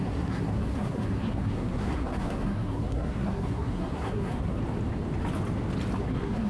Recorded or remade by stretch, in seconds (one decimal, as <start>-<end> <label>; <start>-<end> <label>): 0.0-4.6 remade; 4.6-6.0 recorded; 6.0-6.5 remade

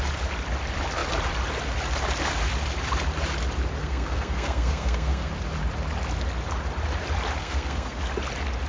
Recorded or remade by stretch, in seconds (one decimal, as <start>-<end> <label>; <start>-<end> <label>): 0.0-3.8 recorded; 3.8-5.3 remade; 5.3-7.4 recorded; 7.4-8.0 remade; 8.0-8.7 recorded

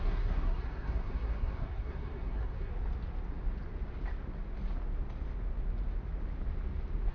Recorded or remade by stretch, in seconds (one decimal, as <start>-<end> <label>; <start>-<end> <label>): 0.0-2.7 remade; 2.7-7.1 recorded

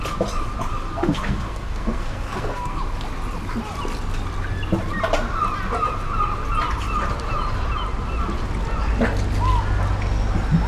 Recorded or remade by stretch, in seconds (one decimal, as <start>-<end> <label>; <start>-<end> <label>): 0.0-0.7 recorded; 0.7-2.8 remade; 2.8-10.7 recorded

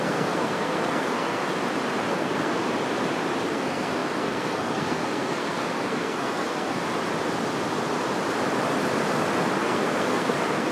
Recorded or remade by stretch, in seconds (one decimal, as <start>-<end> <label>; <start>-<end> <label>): 0.0-1.4 remade; 1.4-2.1 recorded; 2.1-2.6 remade; 2.6-3.5 recorded; 3.5-6.8 remade; 6.8-9.6 recorded; 9.6-10.7 remade

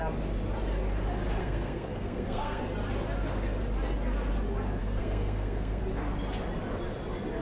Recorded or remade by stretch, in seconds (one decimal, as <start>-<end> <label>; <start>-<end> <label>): 0.0-1.4 recorded; 1.4-2.6 remade; 2.6-4.8 recorded; 4.8-5.8 remade; 5.8-7.4 recorded

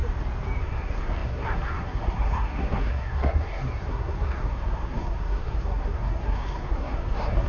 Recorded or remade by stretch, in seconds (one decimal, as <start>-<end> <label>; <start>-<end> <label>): 0.0-0.6 recorded; 0.6-7.5 remade

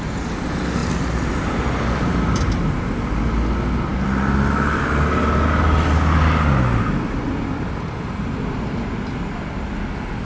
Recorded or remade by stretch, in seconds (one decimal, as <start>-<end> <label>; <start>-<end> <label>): 0.0-10.2 recorded